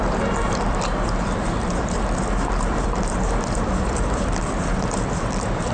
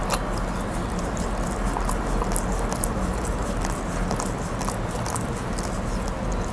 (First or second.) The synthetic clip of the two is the first